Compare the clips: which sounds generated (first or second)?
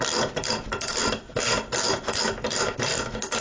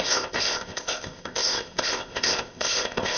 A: second